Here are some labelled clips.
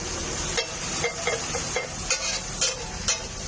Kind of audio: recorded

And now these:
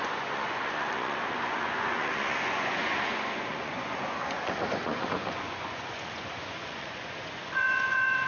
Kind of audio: remade